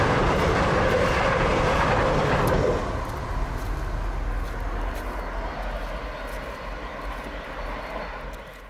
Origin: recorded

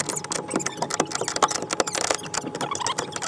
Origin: recorded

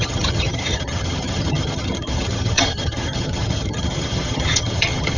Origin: remade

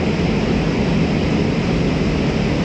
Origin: recorded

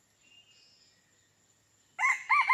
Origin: recorded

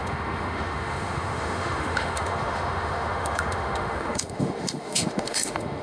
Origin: remade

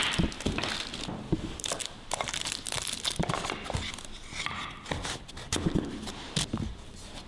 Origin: recorded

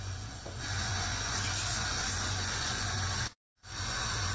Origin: remade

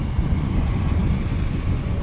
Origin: remade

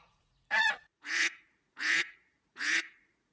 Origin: remade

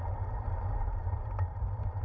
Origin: remade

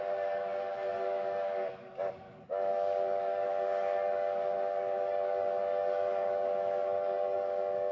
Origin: remade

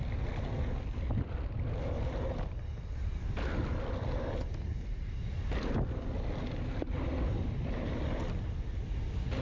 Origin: recorded